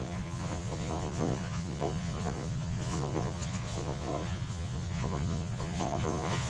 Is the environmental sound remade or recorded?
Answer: remade